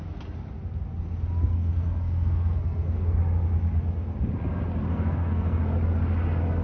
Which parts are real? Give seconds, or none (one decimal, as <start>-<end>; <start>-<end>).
0.0-1.5; 3.2-4.9; 5.6-6.6